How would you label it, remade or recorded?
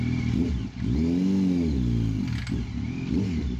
recorded